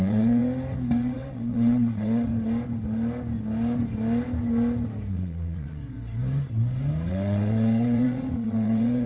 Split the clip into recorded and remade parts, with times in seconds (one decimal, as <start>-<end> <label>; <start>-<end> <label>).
0.0-0.4 remade; 0.4-1.0 recorded; 1.0-2.3 remade; 2.3-5.1 recorded; 5.1-5.8 remade; 5.8-7.1 recorded; 7.1-9.1 remade